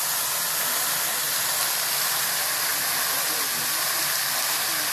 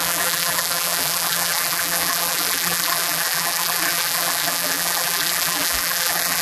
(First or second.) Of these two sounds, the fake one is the second